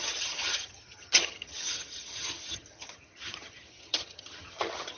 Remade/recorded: remade